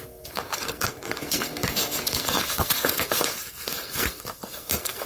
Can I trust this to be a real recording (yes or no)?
no